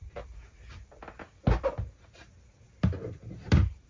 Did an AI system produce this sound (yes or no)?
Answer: no